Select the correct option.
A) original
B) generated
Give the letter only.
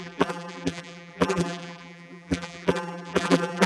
B